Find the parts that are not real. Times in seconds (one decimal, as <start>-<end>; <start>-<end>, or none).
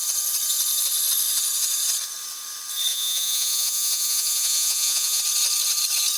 2.9-5.2